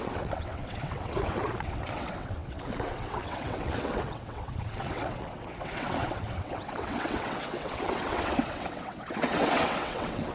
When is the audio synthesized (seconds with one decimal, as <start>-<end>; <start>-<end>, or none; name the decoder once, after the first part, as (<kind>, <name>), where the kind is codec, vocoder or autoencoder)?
0.0-10.3 (vocoder, WaveNeXt)